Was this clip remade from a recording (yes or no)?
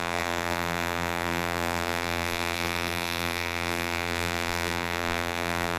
yes